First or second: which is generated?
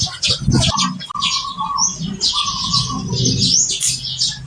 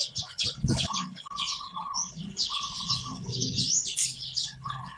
second